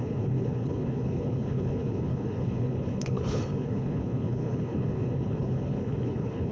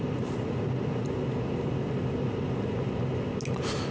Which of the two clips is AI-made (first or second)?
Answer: first